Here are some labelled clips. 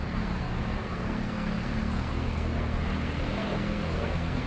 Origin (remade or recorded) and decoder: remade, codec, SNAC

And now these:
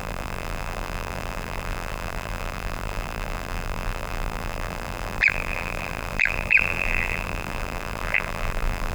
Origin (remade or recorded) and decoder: remade, vocoder, BigVGAN v2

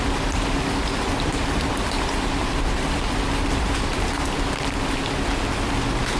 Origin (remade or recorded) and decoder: recorded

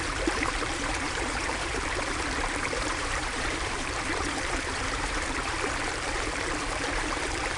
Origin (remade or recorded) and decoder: remade, vocoder, BigVGAN v2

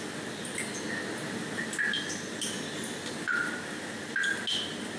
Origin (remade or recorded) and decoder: recorded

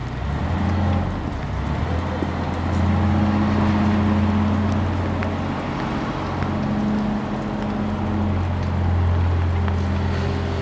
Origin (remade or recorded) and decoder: recorded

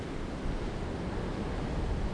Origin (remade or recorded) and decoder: recorded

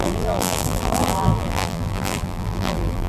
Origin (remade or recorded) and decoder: remade, vocoder, BigVGAN v2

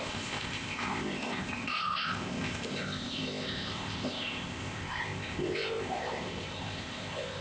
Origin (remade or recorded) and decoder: remade, codec, ZipCodec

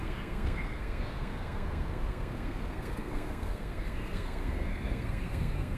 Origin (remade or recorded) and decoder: remade, codec, SNAC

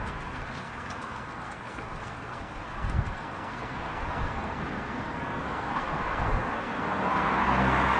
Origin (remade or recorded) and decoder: remade, codec, SNAC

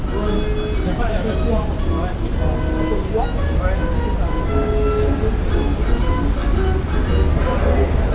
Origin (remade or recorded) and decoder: recorded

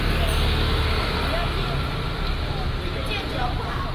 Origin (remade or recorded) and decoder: recorded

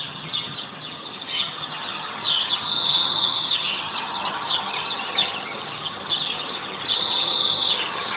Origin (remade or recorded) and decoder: remade, vocoder, HiFi-GAN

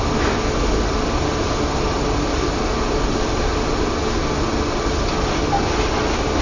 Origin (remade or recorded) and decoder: recorded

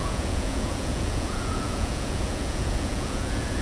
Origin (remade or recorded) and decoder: remade, vocoder, Vocos